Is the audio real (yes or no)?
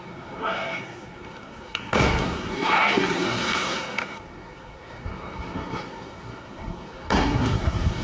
no